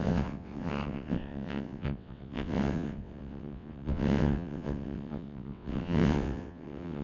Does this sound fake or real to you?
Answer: fake